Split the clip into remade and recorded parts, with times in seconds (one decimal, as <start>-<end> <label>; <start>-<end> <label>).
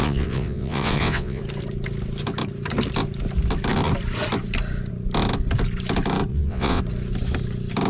0.0-1.4 remade; 1.4-6.3 recorded; 6.3-6.8 remade; 6.8-7.9 recorded